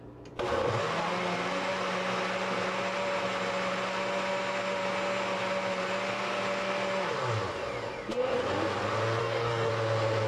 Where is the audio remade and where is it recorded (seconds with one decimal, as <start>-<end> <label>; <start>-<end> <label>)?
0.0-9.2 recorded; 9.2-9.7 remade; 9.7-10.3 recorded